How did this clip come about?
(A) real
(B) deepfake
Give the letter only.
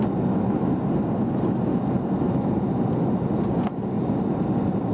A